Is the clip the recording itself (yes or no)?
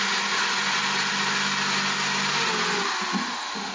yes